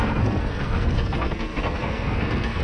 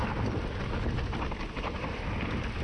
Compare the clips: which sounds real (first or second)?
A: second